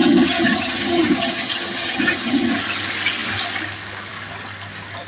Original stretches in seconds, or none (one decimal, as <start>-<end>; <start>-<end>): 2.5-5.1